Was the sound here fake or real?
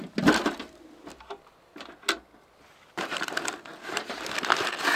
real